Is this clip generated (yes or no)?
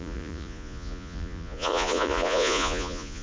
yes